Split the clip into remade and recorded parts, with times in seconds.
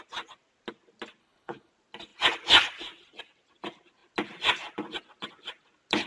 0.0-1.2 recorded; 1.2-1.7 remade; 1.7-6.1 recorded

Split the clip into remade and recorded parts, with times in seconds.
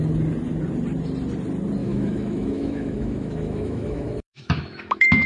0.0-1.8 recorded; 1.8-5.3 remade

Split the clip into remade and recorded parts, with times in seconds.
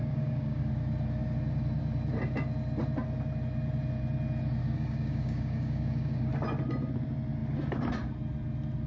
0.0-0.7 remade; 0.7-4.6 recorded; 4.6-6.3 remade; 6.3-8.9 recorded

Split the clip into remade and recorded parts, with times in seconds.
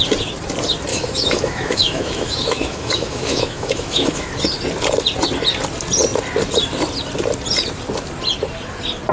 0.0-0.9 recorded; 0.9-4.3 remade; 4.3-9.1 recorded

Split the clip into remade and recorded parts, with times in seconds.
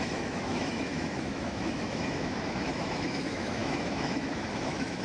0.0-5.0 remade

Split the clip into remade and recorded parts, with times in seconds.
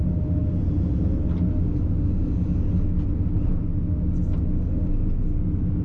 0.0-5.8 recorded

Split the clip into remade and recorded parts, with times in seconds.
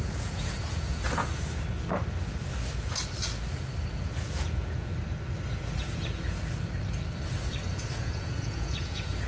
0.0-1.2 remade; 1.2-3.9 recorded; 3.9-4.9 remade; 4.9-7.9 recorded; 7.9-9.3 remade